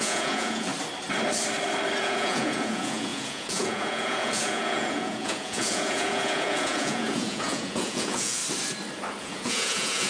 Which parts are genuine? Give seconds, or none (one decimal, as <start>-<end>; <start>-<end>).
0.7-2.0; 8.4-9.2